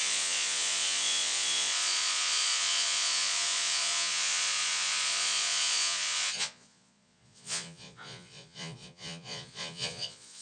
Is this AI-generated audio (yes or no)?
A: yes